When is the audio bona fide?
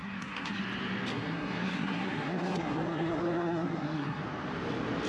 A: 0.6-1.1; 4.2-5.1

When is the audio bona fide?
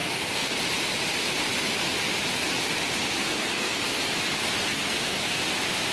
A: 0.6-3.2; 4.0-4.7; 5.4-5.9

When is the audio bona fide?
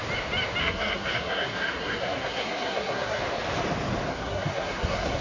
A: 0.0-0.6; 3.2-4.1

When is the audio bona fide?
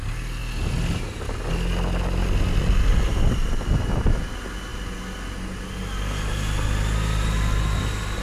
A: 0.0-8.2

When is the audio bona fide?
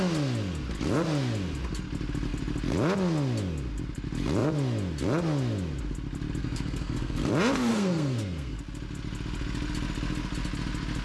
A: 0.0-6.4; 7.3-7.7; 8.6-11.0